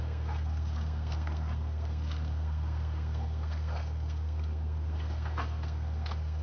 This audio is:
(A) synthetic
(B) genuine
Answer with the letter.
A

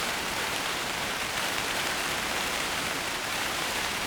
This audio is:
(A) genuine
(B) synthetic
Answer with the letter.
B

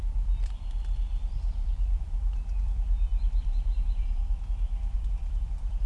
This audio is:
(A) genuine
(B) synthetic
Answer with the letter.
B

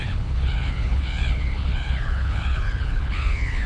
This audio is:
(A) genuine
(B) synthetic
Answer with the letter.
B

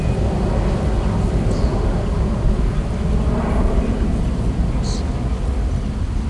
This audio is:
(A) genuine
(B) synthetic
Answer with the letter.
A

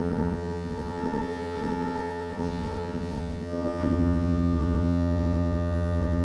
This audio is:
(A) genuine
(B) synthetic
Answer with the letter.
B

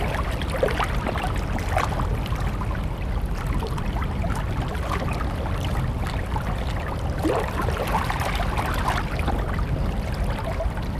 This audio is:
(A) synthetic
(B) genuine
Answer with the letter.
B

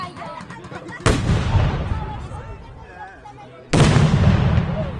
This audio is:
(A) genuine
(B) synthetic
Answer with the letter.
A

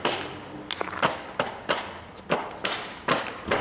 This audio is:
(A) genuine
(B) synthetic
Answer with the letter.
A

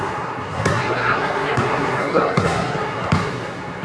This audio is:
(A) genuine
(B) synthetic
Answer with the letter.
B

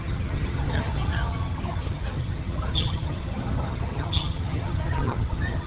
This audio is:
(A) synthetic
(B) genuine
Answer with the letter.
A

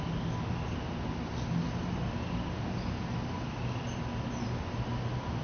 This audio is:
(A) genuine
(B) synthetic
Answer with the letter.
A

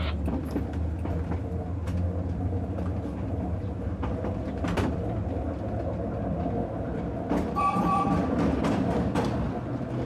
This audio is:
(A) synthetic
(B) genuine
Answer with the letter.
A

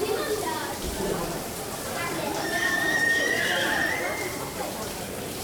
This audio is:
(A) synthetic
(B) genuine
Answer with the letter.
A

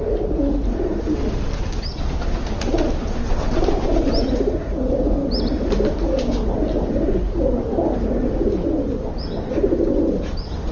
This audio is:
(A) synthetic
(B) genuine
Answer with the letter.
B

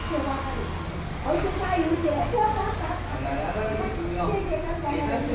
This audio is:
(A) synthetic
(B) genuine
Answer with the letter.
B